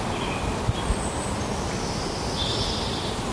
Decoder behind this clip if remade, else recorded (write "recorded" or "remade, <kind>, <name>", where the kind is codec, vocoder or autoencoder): recorded